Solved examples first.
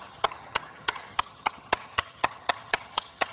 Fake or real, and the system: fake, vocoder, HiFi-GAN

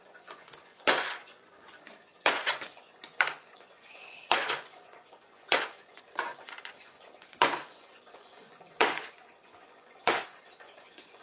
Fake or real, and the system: fake, vocoder, Vocos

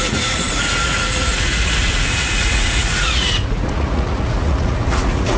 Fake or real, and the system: fake, vocoder, Vocos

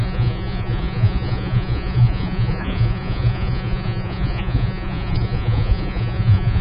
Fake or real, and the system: fake, vocoder, Vocos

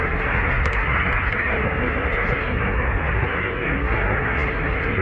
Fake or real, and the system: fake, codec, SNAC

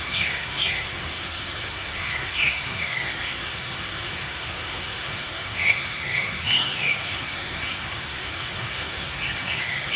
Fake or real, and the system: fake, codec, SNAC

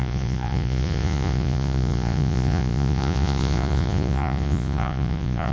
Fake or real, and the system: fake, vocoder, Vocos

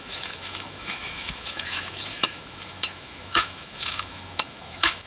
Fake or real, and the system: fake, autoencoder, DAC-VAE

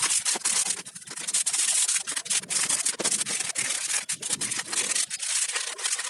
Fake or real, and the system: real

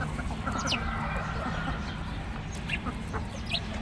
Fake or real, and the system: real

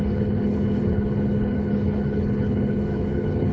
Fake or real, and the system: fake, codec, HILCodec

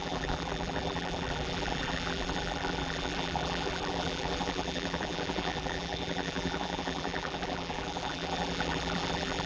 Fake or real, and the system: fake, vocoder, BigVGAN v2